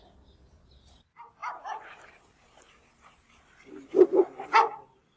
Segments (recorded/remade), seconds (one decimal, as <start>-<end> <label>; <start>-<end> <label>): 0.0-5.2 recorded